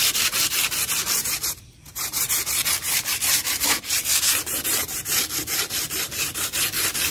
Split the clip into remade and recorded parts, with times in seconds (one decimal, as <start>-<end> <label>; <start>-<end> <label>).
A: 0.0-7.1 remade

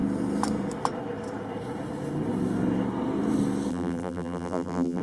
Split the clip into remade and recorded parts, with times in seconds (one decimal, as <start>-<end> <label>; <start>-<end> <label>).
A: 0.0-3.7 recorded; 3.7-5.0 remade

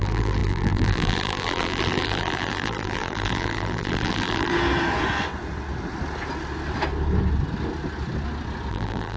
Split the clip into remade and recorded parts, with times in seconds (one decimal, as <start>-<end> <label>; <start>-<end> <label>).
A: 0.0-4.5 remade; 4.5-8.7 recorded; 8.7-9.2 remade

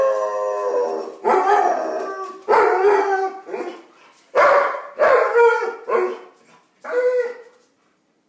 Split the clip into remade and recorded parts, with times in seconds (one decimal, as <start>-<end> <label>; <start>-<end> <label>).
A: 0.0-3.7 recorded; 3.7-5.3 remade; 5.3-8.3 recorded

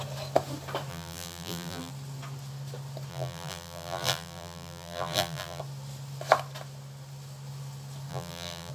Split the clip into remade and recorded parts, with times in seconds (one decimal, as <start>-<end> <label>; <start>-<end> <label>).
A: 0.0-0.9 recorded; 0.9-1.9 remade; 1.9-3.1 recorded; 3.1-5.6 remade; 5.6-8.1 recorded; 8.1-8.7 remade

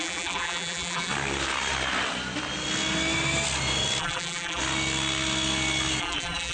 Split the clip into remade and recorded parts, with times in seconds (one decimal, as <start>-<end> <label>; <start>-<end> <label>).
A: 0.0-1.1 remade; 1.1-4.0 recorded; 4.0-4.6 remade; 4.6-6.0 recorded; 6.0-6.5 remade

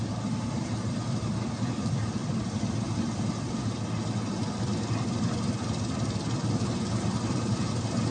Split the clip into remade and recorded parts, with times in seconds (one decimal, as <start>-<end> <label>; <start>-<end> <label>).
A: 0.0-2.2 recorded; 2.2-3.3 remade; 3.3-8.1 recorded

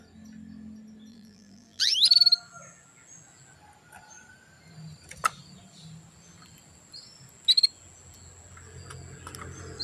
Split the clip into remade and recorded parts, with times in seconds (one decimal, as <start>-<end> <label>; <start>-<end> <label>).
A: 0.0-1.1 recorded; 1.1-1.9 remade; 1.9-9.8 recorded